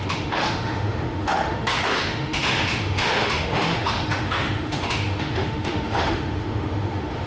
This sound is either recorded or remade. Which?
remade